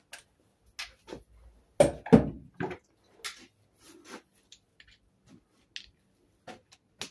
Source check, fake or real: real